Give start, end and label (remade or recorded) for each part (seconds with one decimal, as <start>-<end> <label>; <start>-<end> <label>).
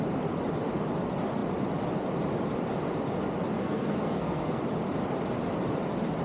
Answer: 0.0-3.6 recorded; 3.6-4.6 remade; 4.6-6.2 recorded